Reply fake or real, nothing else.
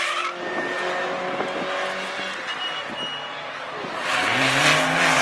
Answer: real